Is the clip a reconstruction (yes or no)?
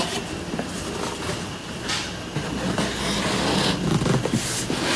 no